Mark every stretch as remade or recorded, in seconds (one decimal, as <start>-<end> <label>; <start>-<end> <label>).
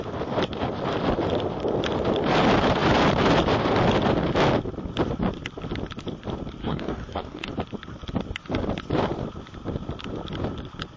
0.0-6.6 recorded; 6.6-7.5 remade; 7.5-11.0 recorded